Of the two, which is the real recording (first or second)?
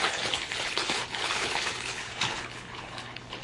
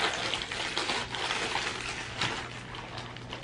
second